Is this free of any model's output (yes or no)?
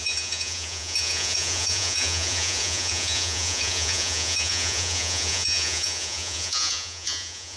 no